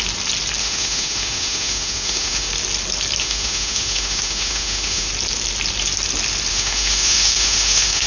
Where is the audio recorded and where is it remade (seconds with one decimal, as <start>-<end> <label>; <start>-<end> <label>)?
0.0-0.6 recorded; 0.6-2.5 remade; 2.5-3.2 recorded; 3.2-5.1 remade; 5.1-6.5 recorded; 6.5-8.1 remade